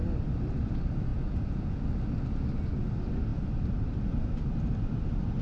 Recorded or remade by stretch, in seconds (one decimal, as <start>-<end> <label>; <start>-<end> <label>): 0.0-1.1 recorded; 1.1-1.8 remade; 1.8-5.4 recorded